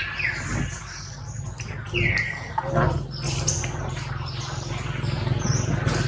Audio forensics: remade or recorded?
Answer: recorded